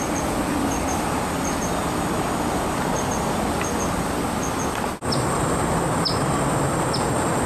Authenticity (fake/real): real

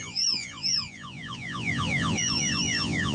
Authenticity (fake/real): fake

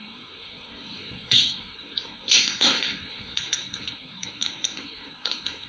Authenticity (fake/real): fake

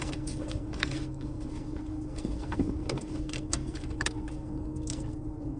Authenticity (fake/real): fake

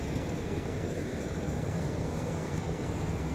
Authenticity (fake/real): fake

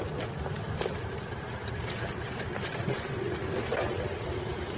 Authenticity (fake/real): real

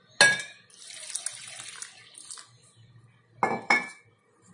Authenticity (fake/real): real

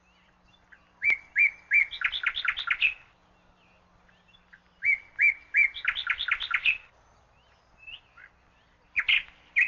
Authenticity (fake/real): real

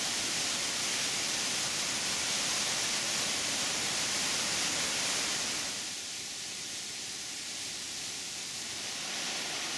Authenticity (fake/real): fake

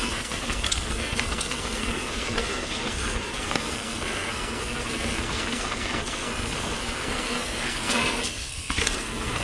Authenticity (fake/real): fake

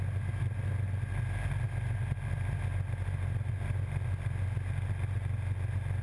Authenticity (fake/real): real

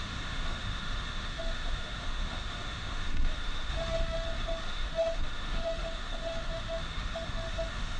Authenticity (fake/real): fake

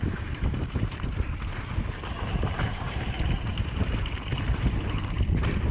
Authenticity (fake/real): fake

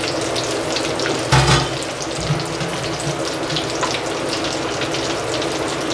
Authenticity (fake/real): real